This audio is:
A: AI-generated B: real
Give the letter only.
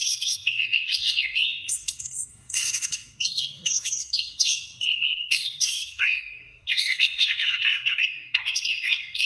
A